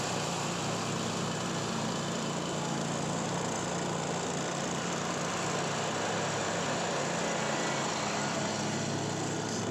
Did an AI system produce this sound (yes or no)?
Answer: no